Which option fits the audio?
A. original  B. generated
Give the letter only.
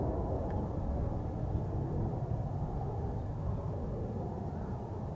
A